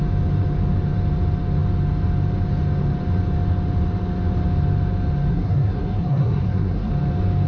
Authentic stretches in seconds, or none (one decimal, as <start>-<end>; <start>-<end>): 0.0-5.3; 6.9-7.5